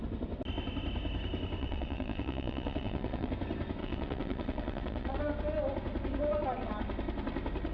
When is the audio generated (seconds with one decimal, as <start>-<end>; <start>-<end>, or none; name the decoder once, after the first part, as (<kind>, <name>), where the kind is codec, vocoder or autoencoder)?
1.6-3.3 (vocoder, WaveNeXt); 3.8-5.2